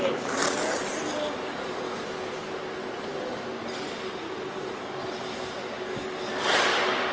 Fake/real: real